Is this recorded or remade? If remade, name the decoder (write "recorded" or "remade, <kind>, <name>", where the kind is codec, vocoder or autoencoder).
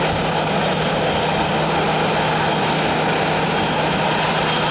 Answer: recorded